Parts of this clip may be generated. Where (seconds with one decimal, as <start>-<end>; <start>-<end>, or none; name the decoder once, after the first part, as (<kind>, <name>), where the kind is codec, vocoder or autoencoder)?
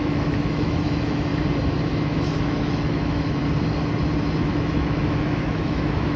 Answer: 0.0-1.3 (autoencoder, DAC-VAE); 1.9-3.4; 4.4-6.2